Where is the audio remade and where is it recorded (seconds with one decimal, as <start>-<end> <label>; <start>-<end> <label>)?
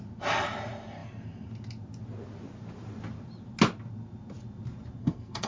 0.0-5.0 recorded; 5.0-5.5 remade